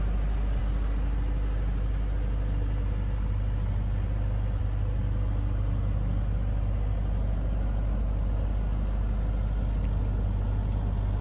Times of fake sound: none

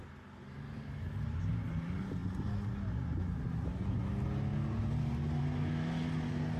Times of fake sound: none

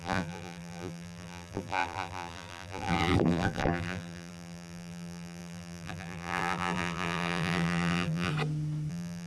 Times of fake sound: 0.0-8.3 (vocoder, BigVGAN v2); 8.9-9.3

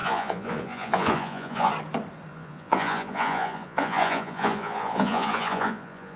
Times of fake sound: 0.0-1.7 (vocoder, Vocos); 2.3-6.2

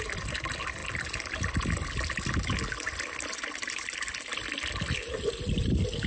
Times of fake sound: none